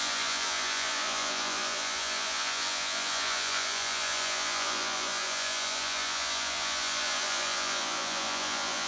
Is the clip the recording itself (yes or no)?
no